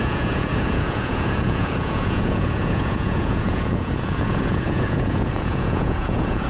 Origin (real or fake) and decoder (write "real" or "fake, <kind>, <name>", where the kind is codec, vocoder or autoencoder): fake, vocoder, Vocos